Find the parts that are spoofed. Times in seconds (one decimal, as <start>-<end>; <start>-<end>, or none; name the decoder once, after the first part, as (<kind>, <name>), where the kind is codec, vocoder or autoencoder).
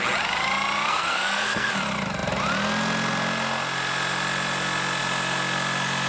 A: 0.9-1.7 (codec, SNAC)